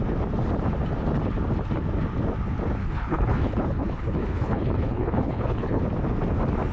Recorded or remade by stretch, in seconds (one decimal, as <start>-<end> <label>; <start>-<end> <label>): 0.0-2.8 recorded; 2.8-5.8 remade; 5.8-6.7 recorded